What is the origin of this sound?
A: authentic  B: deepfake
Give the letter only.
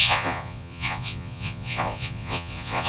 B